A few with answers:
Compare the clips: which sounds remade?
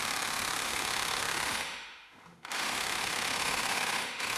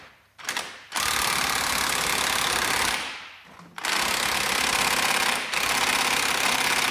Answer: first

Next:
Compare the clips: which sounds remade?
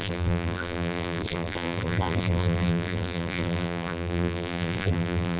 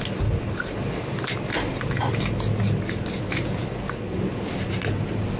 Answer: first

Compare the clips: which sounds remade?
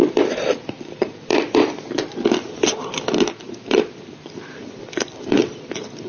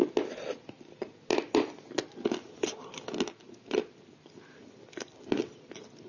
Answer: first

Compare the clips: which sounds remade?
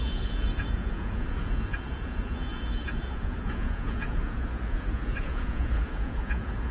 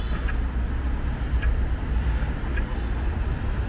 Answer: first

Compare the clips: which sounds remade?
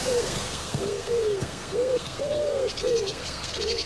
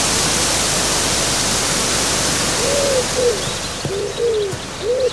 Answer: first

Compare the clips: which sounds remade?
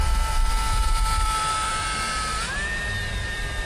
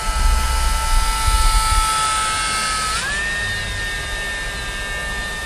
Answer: first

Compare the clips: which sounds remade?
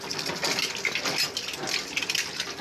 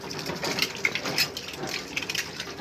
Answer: second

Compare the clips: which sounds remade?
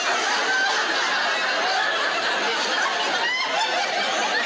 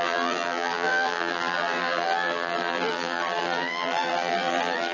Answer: second